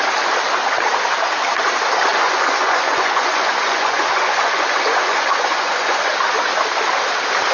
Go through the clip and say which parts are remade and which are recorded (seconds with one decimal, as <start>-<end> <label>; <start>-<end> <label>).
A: 0.0-2.1 recorded; 2.1-6.1 remade; 6.1-7.5 recorded